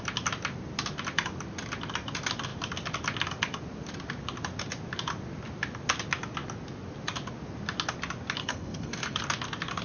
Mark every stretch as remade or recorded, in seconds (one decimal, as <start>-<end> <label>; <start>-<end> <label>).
0.0-8.4 recorded; 8.4-9.2 remade; 9.2-9.8 recorded